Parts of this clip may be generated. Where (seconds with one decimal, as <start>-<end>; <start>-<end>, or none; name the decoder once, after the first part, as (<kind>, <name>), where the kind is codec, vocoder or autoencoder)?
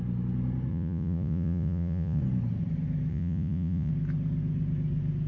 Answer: 0.7-2.2 (vocoder, Vocos); 3.1-3.9